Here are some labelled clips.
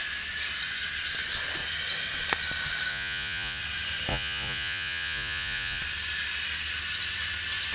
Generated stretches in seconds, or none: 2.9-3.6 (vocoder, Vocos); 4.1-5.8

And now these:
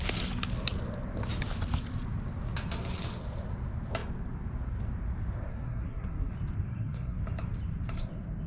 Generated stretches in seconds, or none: 5.5-6.3 (codec, SNAC); 6.7-7.2

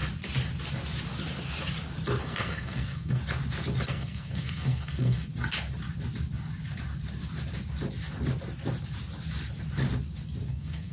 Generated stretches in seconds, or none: 2.2-3.2 (codec, SNAC); 3.9-5.3; 10.5-10.9

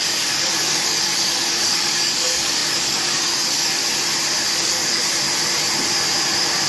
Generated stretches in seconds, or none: 0.0-3.8 (codec, DAC); 4.6-5.0

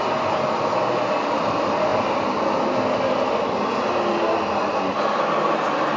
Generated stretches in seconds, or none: none

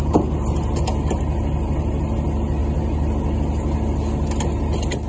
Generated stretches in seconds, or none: none

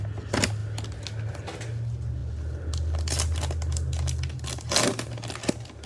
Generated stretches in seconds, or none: none

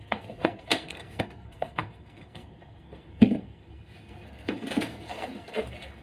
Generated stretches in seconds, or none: 0.0-6.0 (codec, SNAC)